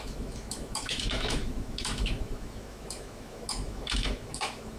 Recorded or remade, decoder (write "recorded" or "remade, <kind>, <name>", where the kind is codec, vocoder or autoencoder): remade, autoencoder, DAC-VAE